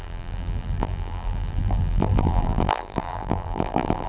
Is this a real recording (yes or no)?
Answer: no